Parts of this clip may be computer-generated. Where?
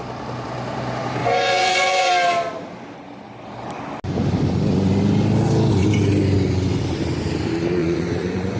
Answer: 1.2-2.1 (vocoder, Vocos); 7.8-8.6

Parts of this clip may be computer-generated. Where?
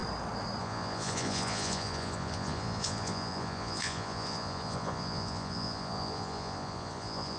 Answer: 0.6-7.4 (vocoder, Vocos)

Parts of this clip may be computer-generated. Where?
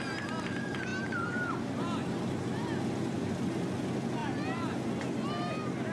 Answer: none